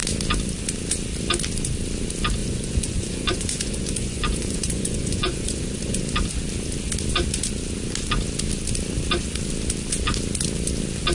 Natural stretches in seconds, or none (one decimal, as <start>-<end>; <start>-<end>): 0.0-2.4; 6.0-11.1